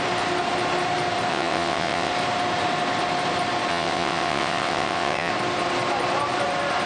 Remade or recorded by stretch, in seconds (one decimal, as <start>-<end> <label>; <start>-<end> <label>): 0.0-1.3 recorded; 1.3-2.1 remade; 2.1-3.7 recorded; 3.7-5.3 remade; 5.3-6.9 recorded